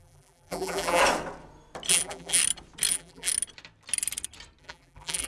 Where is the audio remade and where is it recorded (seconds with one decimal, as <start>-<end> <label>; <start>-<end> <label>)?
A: 0.0-1.0 remade; 1.0-1.9 recorded; 1.9-2.4 remade; 2.4-2.9 recorded; 2.9-3.3 remade; 3.3-4.6 recorded; 4.6-5.3 remade